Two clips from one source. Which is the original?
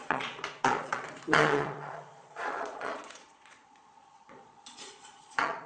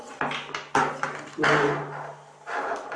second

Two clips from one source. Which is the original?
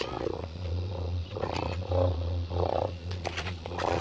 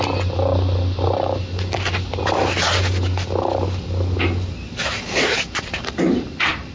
second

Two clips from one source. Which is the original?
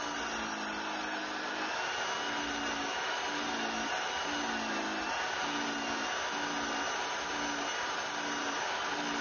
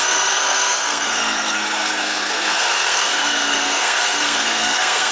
first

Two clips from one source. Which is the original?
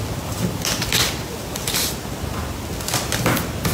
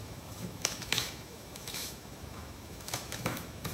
first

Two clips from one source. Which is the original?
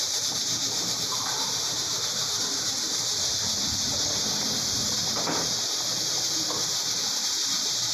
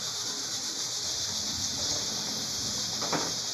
second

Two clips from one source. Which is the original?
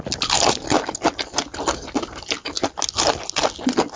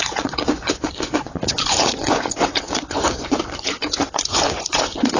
first